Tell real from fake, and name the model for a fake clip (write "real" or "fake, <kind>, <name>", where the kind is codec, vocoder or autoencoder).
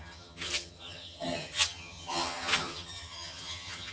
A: fake, vocoder, HiFi-GAN